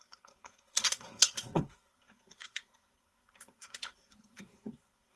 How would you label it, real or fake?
fake